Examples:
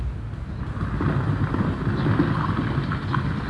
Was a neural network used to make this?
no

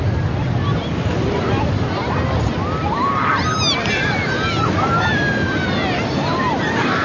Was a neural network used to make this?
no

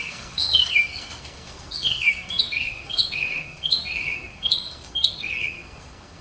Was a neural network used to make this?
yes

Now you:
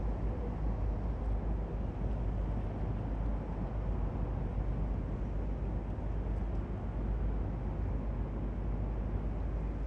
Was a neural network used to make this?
no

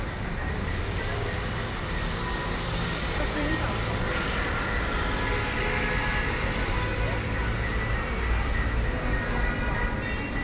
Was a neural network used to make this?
no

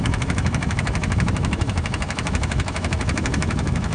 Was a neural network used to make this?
yes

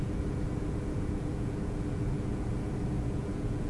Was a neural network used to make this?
yes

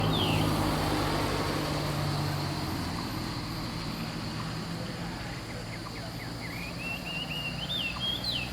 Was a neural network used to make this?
no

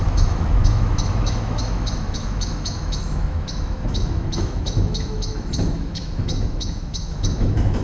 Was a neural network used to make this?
yes